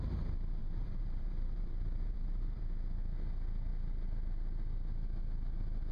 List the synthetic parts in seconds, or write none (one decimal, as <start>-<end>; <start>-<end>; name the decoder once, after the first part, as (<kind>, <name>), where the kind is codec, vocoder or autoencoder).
0.6-2.6 (vocoder, BigVGAN v2)